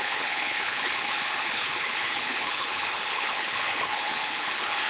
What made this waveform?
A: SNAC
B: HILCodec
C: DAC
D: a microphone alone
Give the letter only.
B